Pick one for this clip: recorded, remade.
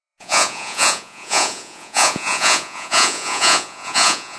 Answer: remade